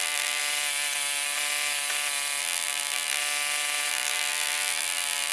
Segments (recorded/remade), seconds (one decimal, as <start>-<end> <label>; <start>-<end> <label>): 0.0-0.4 remade; 0.4-2.4 recorded; 2.4-3.2 remade; 3.2-3.9 recorded; 3.9-5.3 remade